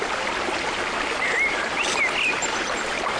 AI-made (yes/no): no